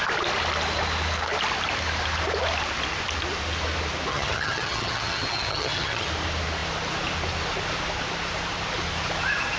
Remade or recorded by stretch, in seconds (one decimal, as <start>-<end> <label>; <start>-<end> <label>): 0.0-4.1 recorded; 4.1-6.1 remade; 6.1-9.6 recorded